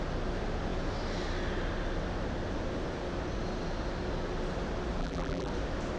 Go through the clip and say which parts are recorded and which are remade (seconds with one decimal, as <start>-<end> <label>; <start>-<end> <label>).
0.0-5.0 recorded; 5.0-5.5 remade; 5.5-6.0 recorded